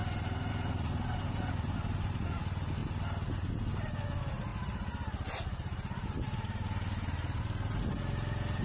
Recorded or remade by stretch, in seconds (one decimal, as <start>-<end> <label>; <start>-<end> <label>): 0.0-4.5 recorded; 4.5-7.8 remade; 7.8-8.6 recorded